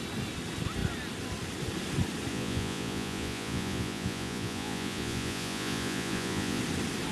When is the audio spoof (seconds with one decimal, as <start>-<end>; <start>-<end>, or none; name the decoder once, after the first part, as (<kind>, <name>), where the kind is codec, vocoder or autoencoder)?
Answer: 2.3-6.6 (vocoder, Vocos)